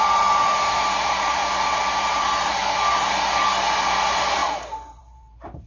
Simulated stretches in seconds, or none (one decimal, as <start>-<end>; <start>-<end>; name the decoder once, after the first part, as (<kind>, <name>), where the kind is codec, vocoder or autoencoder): 0.0-1.4 (vocoder, BigVGAN v2); 2.0-2.6; 3.8-4.4; 5.0-5.7